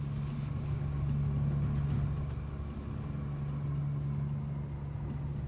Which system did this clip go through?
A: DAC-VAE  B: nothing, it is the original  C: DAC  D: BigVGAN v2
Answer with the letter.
B